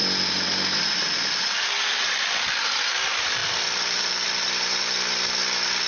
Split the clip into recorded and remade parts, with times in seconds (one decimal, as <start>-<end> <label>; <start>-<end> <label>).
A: 0.0-5.9 recorded